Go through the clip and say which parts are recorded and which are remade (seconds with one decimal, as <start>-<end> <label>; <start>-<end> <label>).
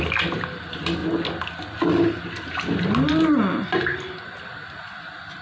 0.0-5.4 recorded